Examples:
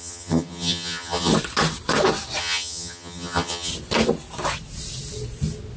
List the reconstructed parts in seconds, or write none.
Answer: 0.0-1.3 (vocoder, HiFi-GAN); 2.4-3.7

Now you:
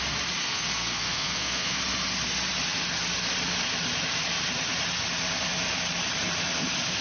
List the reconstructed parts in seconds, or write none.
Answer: 0.4-1.8 (codec, SNAC)